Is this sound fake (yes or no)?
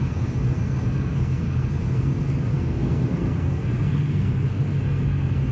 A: yes